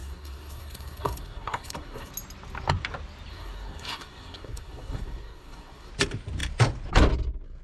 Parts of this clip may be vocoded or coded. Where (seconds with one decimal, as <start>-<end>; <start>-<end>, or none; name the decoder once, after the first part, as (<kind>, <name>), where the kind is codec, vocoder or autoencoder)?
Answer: 0.0-2.1 (codec, SNAC); 3.3-5.9